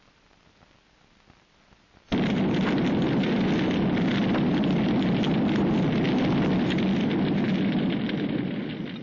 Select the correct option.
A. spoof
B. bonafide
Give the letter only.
B